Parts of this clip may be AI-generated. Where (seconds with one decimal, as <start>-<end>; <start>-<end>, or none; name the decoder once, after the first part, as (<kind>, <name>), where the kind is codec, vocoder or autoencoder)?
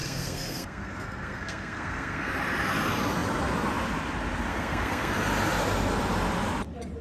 0.0-2.3 (codec, SNAC); 4.5-5.1